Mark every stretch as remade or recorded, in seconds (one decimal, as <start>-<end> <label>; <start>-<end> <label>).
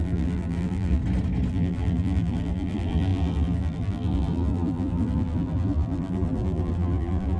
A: 0.0-1.0 remade; 1.0-1.5 recorded; 1.5-7.4 remade